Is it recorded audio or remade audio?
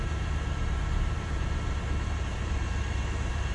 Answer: remade